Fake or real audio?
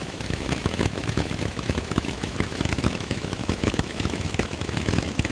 fake